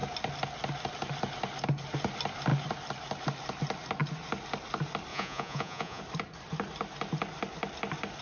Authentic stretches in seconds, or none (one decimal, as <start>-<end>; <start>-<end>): 0.0-5.1; 6.0-8.2